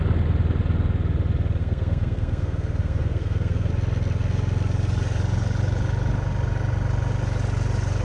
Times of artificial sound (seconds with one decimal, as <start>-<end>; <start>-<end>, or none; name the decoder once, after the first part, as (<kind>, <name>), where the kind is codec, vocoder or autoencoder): 1.6-3.7 (codec, SNAC)